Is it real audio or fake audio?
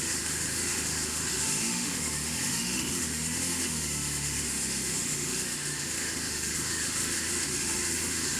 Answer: fake